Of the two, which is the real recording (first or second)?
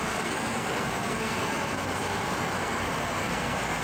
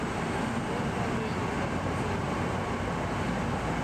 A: second